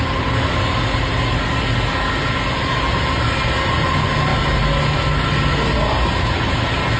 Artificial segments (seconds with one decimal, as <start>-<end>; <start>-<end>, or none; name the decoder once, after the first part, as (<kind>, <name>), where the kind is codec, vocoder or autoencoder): none